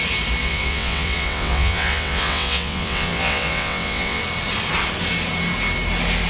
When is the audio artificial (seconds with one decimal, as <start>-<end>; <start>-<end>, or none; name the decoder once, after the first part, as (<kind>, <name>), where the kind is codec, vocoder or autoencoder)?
0.4-4.2 (vocoder, WaveNeXt)